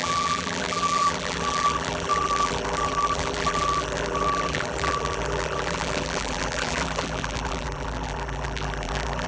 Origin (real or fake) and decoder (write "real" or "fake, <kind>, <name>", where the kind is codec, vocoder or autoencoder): fake, vocoder, BigVGAN v2